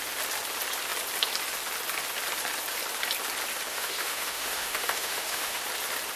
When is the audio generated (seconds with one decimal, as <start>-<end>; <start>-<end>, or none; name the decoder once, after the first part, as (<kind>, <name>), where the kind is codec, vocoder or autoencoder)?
3.7-5.6 (autoencoder, DAC-VAE)